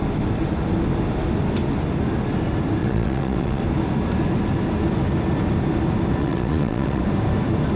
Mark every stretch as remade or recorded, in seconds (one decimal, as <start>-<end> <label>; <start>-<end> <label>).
0.0-2.8 recorded; 2.8-3.6 remade; 3.6-6.2 recorded; 6.2-7.0 remade; 7.0-7.8 recorded